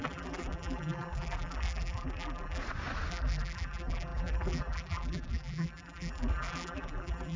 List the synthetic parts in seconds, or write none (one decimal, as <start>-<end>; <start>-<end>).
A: 0.0-2.6; 3.1-7.4